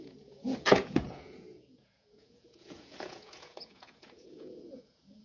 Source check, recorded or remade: remade